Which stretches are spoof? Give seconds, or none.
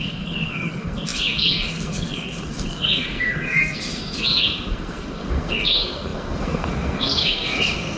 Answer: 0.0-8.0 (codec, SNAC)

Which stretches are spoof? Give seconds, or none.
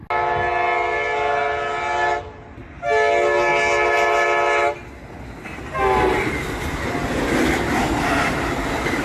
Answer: none